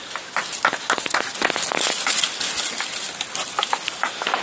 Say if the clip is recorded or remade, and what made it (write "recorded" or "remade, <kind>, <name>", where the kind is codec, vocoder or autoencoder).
recorded